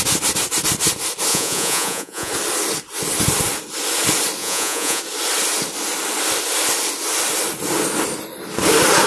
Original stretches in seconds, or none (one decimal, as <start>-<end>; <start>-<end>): 0.0-1.3; 2.3-4.4; 5.0-9.1